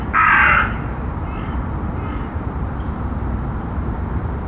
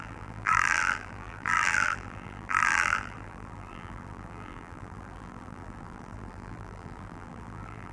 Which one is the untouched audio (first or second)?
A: first